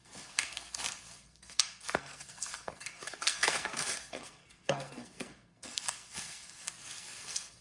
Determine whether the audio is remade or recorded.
remade